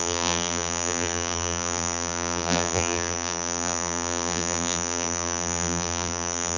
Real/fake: fake